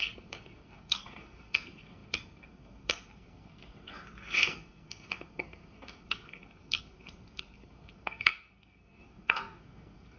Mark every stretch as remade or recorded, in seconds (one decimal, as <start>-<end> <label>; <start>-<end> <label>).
0.0-10.2 remade